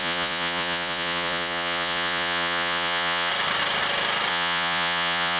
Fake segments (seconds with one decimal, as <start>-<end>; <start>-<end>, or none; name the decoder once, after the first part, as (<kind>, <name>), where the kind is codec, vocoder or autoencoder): 0.0-3.3 (vocoder, Vocos); 4.3-5.4